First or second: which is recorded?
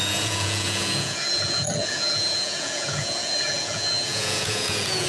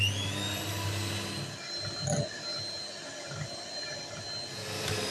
second